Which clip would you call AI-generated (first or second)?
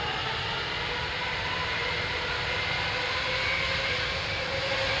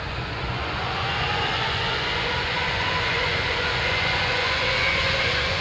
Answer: second